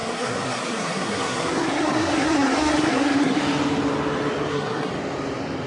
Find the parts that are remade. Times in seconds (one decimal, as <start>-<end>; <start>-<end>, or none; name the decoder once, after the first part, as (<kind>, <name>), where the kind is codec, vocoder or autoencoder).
0.0-3.4 (codec, SNAC); 4.5-4.9